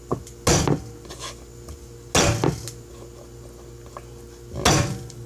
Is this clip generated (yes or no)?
no